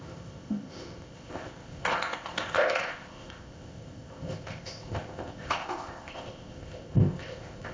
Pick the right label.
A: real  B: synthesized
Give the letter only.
B